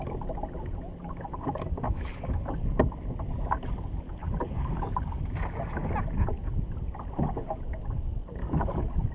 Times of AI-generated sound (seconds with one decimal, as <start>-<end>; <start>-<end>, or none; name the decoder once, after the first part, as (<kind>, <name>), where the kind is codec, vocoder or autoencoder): 1.0-2.8 (codec, DAC); 4.2-5.2; 8.4-9.1